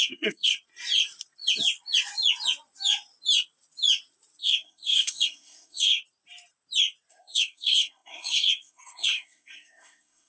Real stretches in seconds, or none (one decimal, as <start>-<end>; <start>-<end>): 0.5-4.4; 6.0-7.1